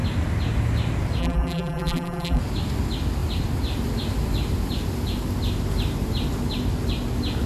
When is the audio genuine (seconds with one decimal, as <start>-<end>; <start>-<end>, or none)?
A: 0.0-1.2; 2.4-7.5